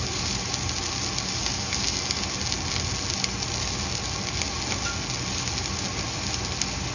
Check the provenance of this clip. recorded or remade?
recorded